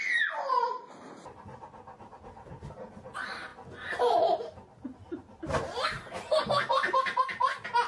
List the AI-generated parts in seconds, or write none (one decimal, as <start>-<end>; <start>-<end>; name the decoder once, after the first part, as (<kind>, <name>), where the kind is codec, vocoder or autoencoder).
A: none